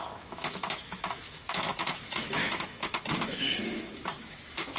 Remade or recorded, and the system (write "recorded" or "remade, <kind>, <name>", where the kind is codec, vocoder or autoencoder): remade, autoencoder, DAC-VAE